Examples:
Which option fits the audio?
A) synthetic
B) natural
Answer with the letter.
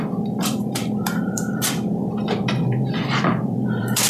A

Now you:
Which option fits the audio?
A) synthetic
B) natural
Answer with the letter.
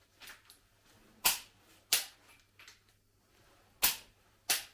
B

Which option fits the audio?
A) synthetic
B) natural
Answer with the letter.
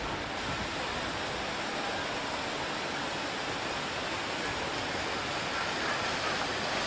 B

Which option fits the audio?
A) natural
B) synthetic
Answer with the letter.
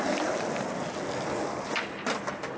A